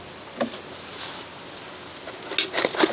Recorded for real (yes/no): yes